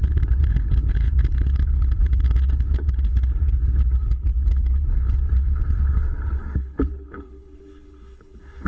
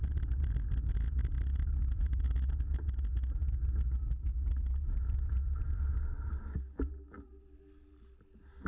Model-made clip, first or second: first